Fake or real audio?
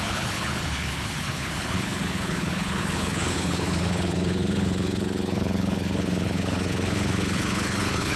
fake